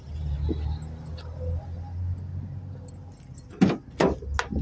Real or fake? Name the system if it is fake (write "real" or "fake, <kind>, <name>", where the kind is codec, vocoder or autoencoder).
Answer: real